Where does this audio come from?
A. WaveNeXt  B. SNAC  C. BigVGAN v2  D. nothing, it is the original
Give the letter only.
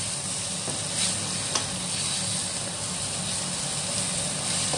D